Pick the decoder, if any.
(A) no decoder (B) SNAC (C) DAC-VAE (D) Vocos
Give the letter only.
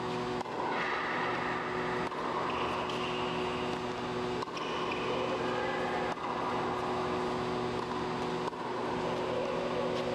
A